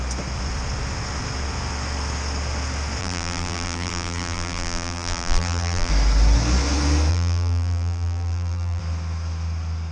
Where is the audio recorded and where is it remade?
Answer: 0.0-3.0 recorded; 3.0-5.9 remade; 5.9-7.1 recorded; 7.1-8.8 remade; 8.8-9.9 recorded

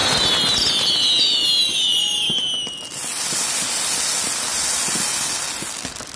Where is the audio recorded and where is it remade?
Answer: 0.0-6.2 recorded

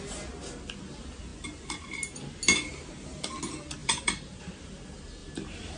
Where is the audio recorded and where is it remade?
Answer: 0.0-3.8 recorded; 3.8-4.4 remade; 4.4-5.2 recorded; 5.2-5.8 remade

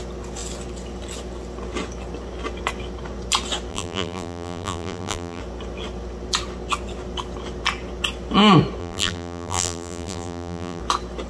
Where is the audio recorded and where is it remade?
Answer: 0.0-3.7 recorded; 3.7-5.4 remade; 5.4-8.8 recorded; 8.8-10.8 remade; 10.8-11.3 recorded